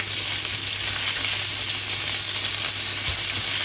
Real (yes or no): yes